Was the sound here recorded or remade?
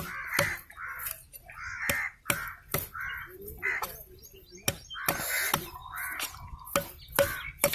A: recorded